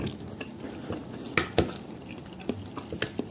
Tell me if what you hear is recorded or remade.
recorded